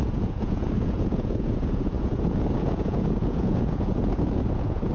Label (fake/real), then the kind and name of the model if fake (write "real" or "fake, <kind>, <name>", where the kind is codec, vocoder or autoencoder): fake, vocoder, Vocos